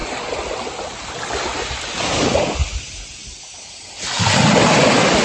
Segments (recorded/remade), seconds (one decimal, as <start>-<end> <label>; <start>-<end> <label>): 0.0-5.2 recorded